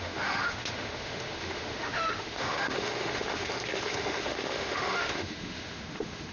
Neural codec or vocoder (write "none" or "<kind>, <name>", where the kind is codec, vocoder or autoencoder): autoencoder, DAC-VAE